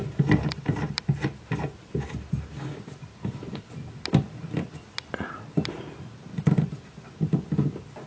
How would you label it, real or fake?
real